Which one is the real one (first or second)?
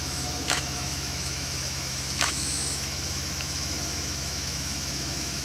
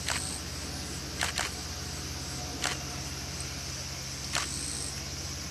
second